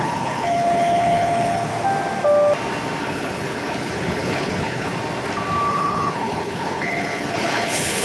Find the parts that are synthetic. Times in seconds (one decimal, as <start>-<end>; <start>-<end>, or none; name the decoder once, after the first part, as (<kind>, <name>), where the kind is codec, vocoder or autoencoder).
0.0-1.7 (codec, HILCodec); 3.0-4.9; 5.7-8.0